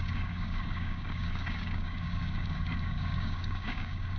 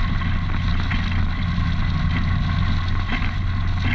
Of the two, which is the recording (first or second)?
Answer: second